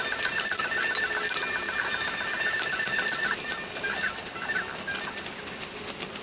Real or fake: real